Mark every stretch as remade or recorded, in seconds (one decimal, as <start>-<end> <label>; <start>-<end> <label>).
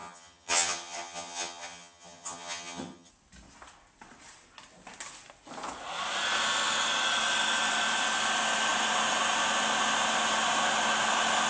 0.0-3.1 remade; 3.1-11.5 recorded